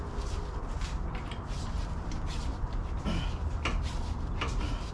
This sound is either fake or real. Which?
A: real